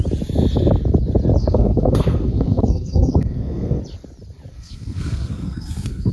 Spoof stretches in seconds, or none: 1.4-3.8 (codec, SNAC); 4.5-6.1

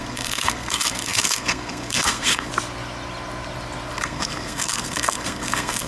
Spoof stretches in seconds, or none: 0.0-2.5 (codec, SNAC); 4.0-5.9

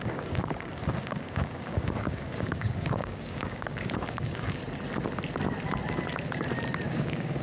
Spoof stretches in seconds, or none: 0.0-4.6 (codec, DAC); 6.9-7.4

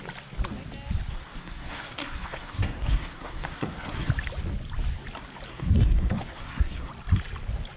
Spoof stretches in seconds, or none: 1.1-4.1 (codec, SNAC); 5.5-6.9

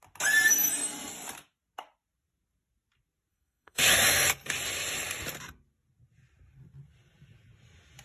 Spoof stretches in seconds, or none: 3.3-3.8 (codec, SNAC)

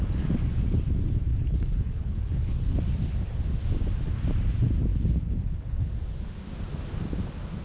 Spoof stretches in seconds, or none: 1.3-2.8 (codec, HILCodec); 4.9-5.9

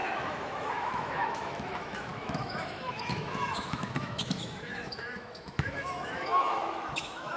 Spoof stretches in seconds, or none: 0.0-7.4 (autoencoder, DAC-VAE)

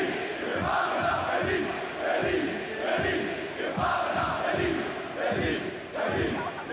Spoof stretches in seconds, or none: 0.5-1.6 (vocoder, Vocos)